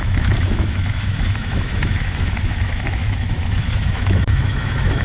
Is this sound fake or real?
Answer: fake